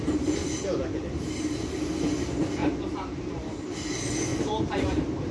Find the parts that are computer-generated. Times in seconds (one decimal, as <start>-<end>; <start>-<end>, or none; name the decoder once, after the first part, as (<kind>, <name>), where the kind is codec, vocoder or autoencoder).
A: 0.4-1.3 (vocoder, BigVGAN v2); 2.6-3.5; 4.3-5.3